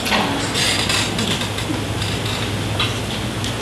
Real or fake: real